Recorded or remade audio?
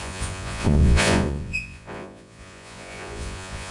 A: remade